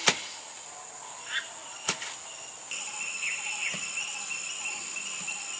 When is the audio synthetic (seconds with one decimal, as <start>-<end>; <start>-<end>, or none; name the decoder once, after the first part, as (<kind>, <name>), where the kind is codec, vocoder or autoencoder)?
none